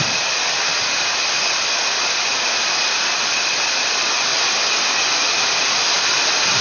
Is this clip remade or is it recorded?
recorded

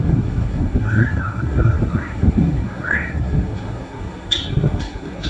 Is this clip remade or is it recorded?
remade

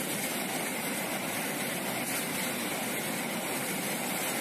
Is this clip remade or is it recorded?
recorded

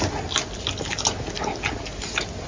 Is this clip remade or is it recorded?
recorded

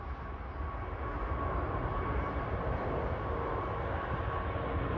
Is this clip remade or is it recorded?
recorded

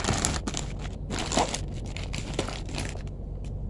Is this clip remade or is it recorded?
recorded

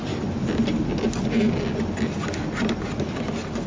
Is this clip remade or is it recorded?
recorded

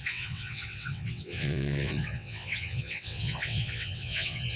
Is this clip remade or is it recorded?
remade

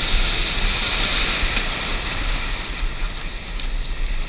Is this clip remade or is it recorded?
recorded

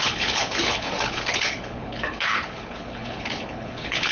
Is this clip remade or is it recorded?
remade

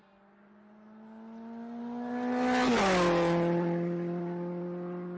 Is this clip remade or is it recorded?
recorded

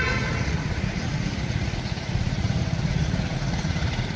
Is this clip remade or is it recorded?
remade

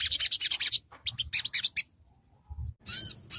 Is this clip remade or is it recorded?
recorded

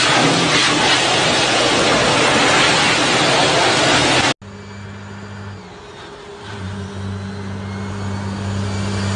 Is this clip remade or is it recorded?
recorded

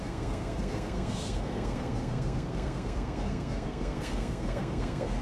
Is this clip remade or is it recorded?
remade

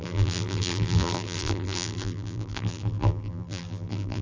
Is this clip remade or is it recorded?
remade